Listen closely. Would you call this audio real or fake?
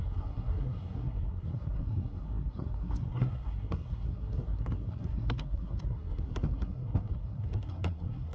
fake